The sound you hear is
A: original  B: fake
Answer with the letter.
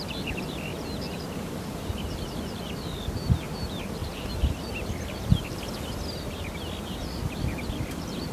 A